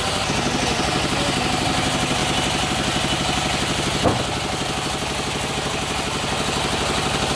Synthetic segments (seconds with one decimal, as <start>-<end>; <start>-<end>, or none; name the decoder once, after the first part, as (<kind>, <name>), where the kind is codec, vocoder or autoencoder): none